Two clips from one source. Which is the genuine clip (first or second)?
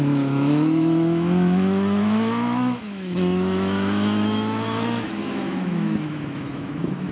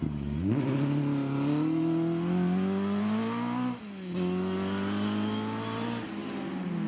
second